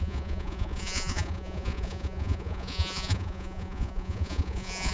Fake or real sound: fake